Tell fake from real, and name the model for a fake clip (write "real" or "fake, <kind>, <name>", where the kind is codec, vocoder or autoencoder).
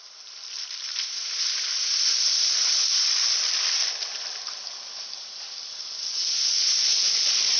real